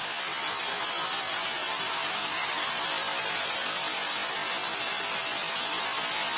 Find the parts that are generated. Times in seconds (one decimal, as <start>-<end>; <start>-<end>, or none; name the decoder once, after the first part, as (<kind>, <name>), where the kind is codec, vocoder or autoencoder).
1.9-2.7 (autoencoder, DAC-VAE)